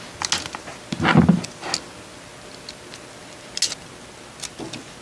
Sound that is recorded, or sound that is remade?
recorded